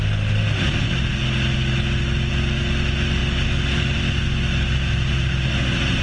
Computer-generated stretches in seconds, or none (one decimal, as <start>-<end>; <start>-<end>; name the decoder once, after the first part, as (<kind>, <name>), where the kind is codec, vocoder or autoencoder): none

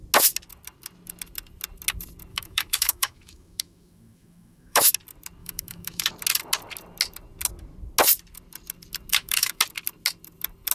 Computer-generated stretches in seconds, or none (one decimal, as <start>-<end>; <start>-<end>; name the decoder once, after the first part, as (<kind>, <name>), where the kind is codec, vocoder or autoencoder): 2.3-4.9 (autoencoder, DAC-VAE); 5.4-6.1; 9.1-9.6

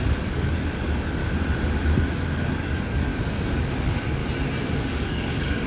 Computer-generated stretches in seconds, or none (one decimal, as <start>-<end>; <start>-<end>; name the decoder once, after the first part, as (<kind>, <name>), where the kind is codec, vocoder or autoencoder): 0.0-1.2 (codec, DAC); 2.5-3.1; 3.6-4.2; 4.8-5.7

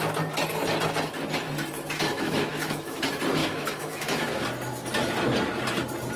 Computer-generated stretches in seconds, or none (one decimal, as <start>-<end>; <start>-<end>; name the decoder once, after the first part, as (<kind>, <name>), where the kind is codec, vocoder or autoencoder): 2.1-3.0 (autoencoder, DAC-VAE); 3.4-4.4

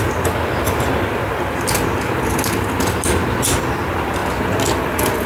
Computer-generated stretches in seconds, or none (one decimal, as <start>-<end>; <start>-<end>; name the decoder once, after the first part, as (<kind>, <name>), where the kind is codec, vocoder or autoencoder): none

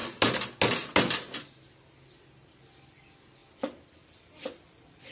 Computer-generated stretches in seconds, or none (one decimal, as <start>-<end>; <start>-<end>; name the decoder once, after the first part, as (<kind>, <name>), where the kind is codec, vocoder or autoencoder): none

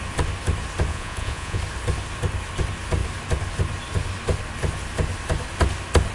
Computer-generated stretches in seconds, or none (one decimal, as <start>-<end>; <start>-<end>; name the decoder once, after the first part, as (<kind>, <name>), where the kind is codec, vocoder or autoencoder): 0.9-1.6 (vocoder, Vocos)